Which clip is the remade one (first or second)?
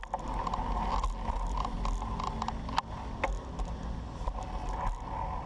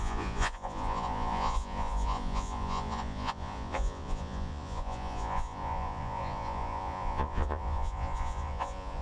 second